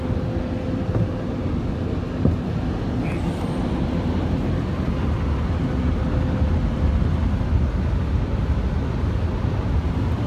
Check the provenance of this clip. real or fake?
real